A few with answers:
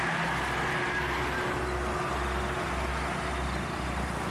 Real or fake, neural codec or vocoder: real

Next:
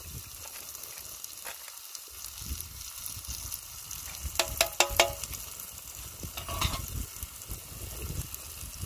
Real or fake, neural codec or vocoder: real